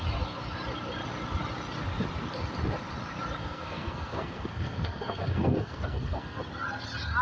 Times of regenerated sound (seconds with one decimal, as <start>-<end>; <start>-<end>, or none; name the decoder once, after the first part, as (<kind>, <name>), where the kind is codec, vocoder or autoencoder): 3.4-6.4 (codec, SNAC)